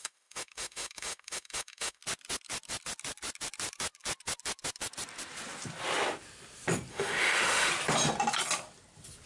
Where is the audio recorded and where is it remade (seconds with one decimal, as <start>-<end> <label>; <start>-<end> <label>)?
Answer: 0.0-2.0 remade; 2.0-6.9 recorded; 6.9-7.7 remade; 7.7-9.3 recorded